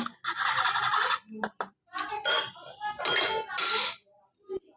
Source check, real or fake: real